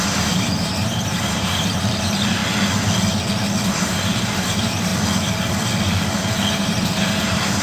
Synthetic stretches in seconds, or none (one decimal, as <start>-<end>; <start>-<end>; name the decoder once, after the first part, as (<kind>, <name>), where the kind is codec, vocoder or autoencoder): 0.0-2.4 (vocoder, BigVGAN v2); 3.8-4.9; 6.5-7.6